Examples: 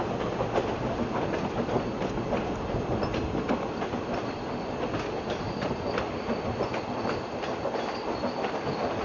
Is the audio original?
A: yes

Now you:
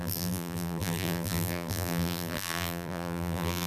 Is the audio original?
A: no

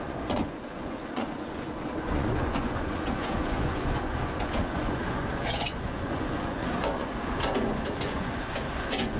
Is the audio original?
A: no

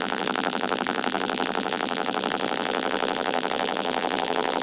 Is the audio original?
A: no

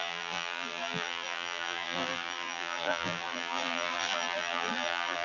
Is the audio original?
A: no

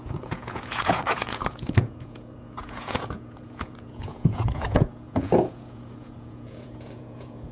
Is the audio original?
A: no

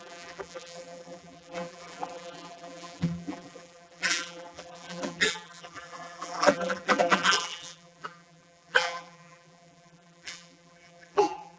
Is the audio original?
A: no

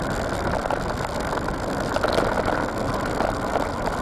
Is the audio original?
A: yes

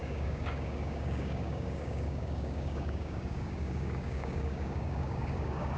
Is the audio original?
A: no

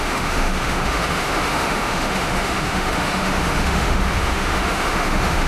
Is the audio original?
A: no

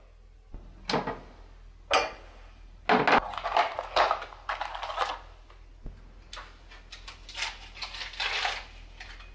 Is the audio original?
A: yes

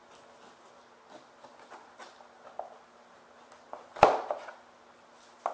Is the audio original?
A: yes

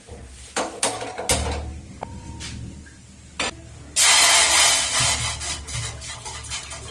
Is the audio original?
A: yes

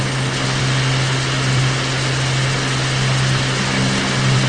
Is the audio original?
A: yes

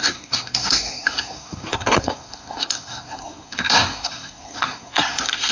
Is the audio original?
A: no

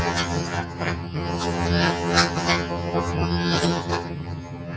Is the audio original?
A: no